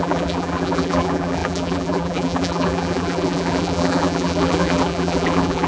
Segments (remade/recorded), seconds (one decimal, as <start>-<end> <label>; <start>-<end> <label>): 0.0-5.7 remade